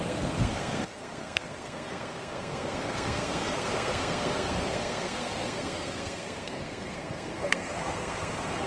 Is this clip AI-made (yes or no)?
yes